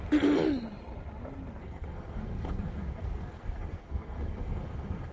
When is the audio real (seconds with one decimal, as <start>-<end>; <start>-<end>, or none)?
0.0-1.6